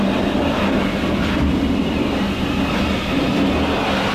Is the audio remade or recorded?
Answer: recorded